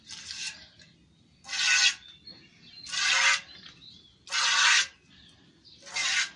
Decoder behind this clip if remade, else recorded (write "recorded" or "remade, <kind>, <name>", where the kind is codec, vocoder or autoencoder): recorded